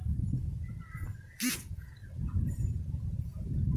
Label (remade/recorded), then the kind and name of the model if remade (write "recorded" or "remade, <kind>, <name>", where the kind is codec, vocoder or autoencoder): remade, vocoder, BigVGAN v2